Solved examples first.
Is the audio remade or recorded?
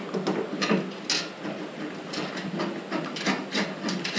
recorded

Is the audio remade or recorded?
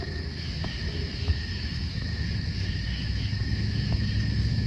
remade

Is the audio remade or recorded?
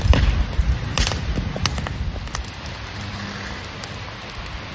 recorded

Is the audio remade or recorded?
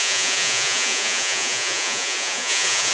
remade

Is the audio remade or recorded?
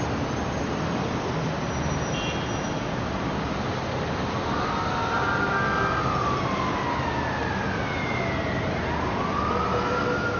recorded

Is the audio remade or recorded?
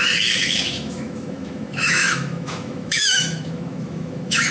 remade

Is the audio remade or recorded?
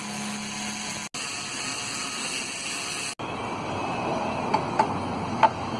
recorded